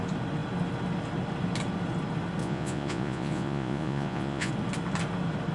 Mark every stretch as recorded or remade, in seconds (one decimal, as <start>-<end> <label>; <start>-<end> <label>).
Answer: 0.0-2.4 recorded; 2.4-4.5 remade; 4.5-5.5 recorded